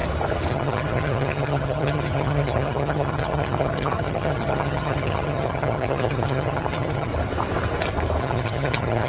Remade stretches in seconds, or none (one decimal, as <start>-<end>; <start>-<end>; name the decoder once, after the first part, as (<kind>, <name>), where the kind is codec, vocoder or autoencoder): 0.5-7.1 (vocoder, HiFi-GAN); 8.2-9.1